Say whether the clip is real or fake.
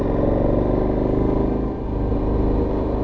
real